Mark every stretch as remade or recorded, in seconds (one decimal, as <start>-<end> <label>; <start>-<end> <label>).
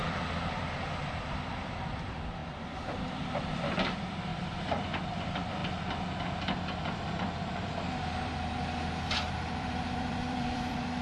0.0-5.6 remade; 5.6-9.3 recorded; 9.3-11.0 remade